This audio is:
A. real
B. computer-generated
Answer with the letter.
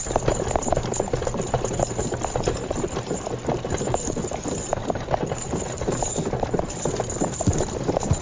A